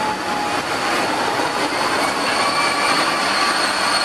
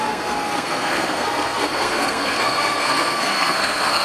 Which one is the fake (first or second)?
second